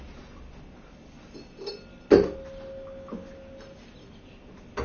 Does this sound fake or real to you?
real